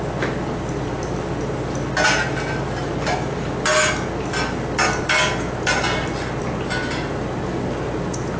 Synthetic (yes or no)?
no